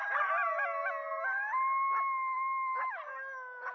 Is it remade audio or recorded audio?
recorded